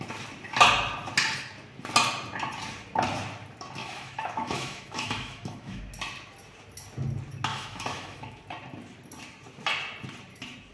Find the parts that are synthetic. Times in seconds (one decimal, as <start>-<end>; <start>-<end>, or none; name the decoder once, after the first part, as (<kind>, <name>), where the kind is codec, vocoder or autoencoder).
3.8-5.8 (autoencoder, DAC-VAE); 7.5-8.4